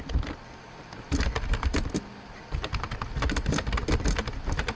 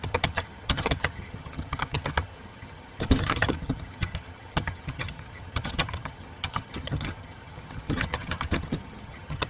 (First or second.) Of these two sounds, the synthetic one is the second